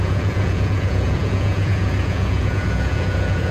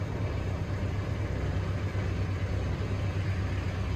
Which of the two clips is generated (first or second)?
first